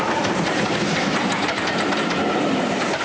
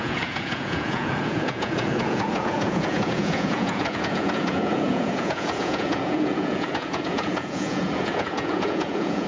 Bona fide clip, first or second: first